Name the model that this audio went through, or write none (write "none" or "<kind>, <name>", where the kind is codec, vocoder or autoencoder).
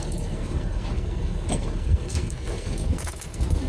codec, SNAC